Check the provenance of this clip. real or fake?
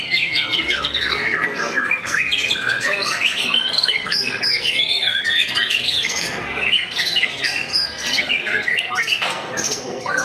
fake